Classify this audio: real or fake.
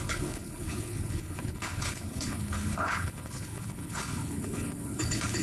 fake